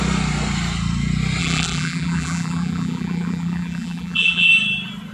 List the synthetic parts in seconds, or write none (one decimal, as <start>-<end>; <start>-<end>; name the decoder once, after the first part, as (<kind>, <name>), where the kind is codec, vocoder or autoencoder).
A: 1.4-4.5 (vocoder, BigVGAN v2)